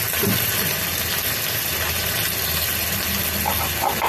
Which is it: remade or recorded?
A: recorded